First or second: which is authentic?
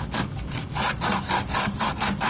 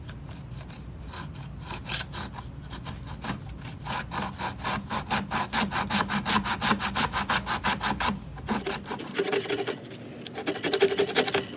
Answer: second